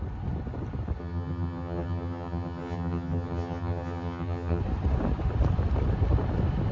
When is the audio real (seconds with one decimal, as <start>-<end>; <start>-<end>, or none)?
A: 0.0-1.0; 4.6-6.7